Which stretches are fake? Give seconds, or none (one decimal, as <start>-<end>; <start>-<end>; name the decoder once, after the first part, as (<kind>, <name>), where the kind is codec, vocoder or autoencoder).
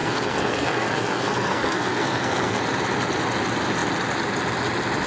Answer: 0.0-2.6 (codec, SNAC)